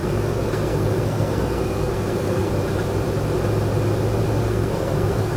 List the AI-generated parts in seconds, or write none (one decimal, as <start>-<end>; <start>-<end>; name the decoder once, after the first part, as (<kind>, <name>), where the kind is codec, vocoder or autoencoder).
0.0-2.5 (codec, SNAC); 4.4-5.4